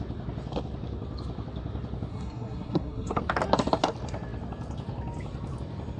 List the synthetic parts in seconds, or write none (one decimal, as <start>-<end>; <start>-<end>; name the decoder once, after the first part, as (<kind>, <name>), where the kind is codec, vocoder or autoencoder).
2.1-3.2 (codec, SNAC)